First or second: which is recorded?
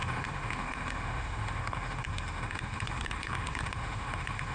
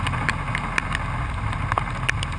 second